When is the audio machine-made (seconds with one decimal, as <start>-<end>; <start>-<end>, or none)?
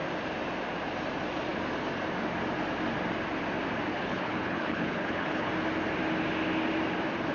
3.9-5.5